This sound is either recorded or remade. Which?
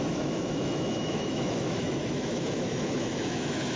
remade